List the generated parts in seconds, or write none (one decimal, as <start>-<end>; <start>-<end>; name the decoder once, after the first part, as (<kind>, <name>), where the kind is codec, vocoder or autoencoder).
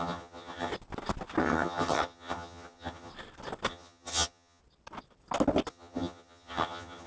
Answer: 0.0-0.7 (vocoder, HiFi-GAN); 1.4-3.1; 3.7-4.6; 5.7-7.1